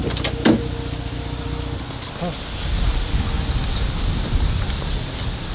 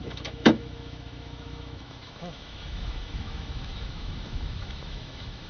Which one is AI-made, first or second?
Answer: second